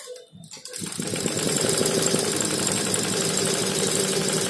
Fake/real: real